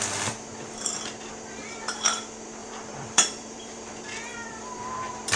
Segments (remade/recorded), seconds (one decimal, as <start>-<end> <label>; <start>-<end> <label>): 0.0-2.6 recorded; 2.6-3.9 remade; 3.9-4.3 recorded; 4.3-4.8 remade; 4.8-5.4 recorded